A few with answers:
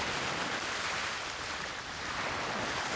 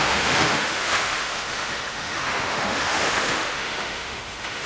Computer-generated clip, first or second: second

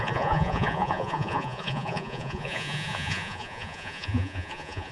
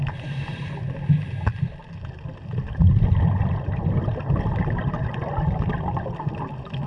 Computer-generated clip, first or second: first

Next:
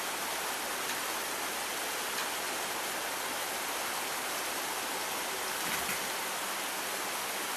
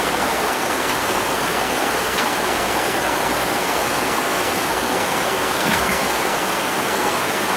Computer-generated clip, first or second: second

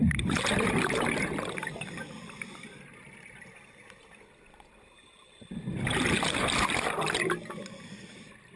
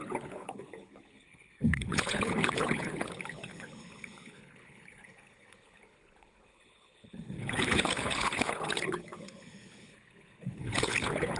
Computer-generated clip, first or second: second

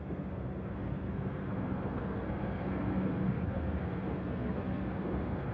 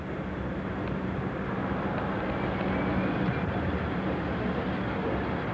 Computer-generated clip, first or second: first